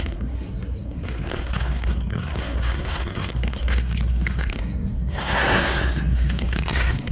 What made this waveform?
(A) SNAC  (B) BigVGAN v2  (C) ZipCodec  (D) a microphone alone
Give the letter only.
A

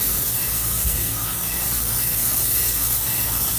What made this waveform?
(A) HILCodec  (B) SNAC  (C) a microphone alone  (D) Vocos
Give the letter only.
B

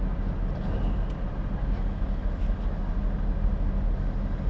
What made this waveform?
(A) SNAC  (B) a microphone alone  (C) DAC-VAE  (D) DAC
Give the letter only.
B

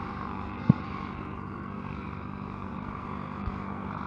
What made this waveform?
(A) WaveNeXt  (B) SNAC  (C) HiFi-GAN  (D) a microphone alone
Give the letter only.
B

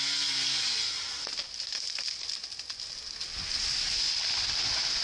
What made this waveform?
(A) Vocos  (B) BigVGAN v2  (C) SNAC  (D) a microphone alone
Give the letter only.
D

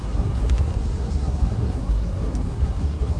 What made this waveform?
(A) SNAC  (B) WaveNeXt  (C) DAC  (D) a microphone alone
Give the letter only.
A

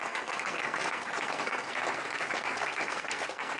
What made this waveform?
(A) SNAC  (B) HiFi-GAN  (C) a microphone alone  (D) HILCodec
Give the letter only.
A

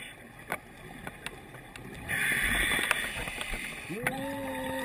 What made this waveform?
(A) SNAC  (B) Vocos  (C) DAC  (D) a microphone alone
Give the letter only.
D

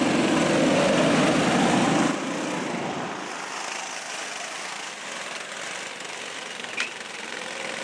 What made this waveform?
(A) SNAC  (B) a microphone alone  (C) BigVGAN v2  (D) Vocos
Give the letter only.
B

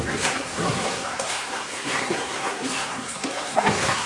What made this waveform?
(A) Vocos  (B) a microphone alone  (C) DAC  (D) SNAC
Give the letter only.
D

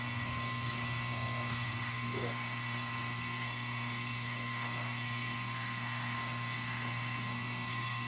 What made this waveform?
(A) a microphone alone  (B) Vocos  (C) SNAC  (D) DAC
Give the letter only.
C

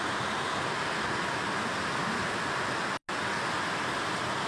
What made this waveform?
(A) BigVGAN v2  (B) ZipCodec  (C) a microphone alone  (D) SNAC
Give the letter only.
C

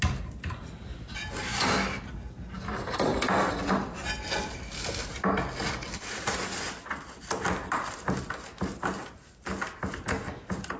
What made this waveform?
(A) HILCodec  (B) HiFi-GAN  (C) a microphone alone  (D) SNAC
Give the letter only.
C